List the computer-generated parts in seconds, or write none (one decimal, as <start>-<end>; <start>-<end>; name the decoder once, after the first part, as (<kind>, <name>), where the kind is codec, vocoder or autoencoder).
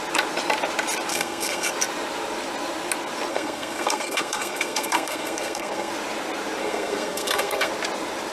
1.1-1.7 (codec, SNAC); 3.3-5.9; 6.6-7.7